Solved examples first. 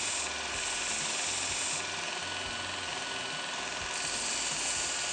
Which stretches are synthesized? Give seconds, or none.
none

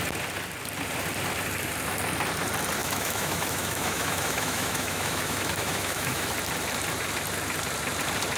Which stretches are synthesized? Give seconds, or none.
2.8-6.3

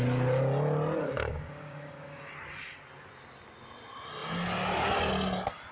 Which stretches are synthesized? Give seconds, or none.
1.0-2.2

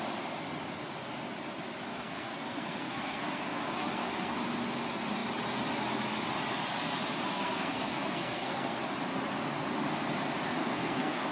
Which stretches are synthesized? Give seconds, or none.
1.9-4.3; 7.3-8.8; 10.6-11.3

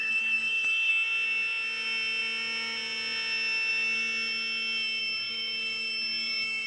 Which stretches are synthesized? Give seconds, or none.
0.0-0.9; 5.0-6.7

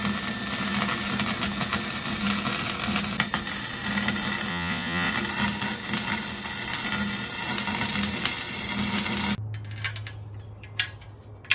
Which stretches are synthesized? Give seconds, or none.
4.5-5.1